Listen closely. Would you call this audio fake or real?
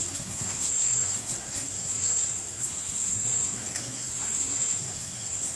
fake